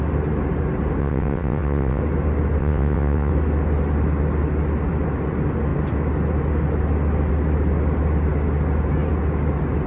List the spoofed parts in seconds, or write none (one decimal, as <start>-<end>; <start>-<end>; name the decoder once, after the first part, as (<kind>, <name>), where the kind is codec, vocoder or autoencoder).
1.0-2.0 (vocoder, WaveNeXt); 2.6-3.3